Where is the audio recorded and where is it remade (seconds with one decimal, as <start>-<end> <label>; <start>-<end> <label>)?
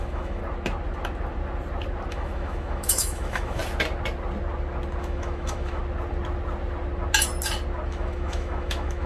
0.0-0.4 remade; 0.4-2.1 recorded; 2.1-3.6 remade; 3.6-5.0 recorded; 5.0-5.8 remade; 5.8-7.9 recorded; 7.9-9.1 remade